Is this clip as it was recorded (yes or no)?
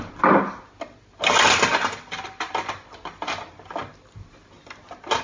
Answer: yes